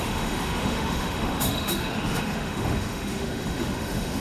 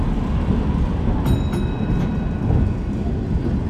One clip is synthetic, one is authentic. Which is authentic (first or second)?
second